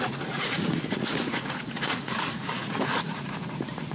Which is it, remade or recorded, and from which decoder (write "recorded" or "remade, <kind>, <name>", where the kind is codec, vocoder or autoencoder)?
remade, vocoder, Vocos